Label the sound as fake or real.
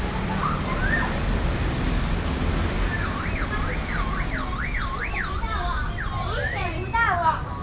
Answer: real